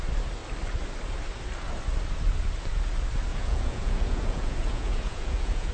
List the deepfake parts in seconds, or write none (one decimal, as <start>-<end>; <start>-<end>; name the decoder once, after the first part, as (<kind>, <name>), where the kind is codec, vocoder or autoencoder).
3.3-5.7 (vocoder, Vocos)